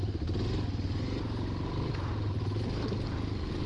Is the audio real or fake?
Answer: real